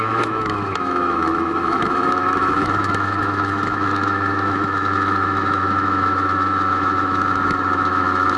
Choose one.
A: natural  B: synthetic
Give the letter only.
B